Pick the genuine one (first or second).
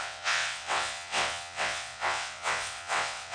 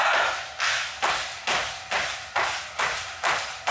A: second